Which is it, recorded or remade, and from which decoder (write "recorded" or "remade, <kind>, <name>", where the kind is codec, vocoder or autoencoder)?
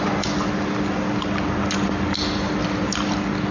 recorded